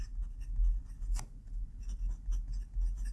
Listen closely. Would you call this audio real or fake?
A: real